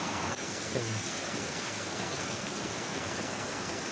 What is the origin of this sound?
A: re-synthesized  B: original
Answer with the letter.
A